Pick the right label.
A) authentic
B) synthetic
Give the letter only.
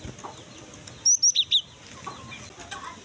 A